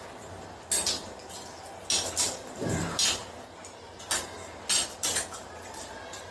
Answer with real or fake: real